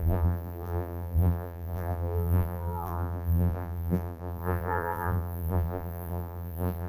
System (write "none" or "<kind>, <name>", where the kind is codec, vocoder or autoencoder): vocoder, BigVGAN v2